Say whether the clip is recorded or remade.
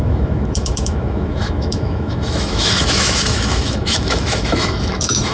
remade